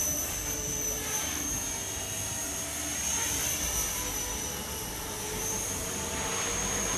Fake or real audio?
fake